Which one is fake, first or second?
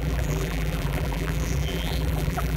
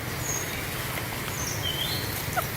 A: first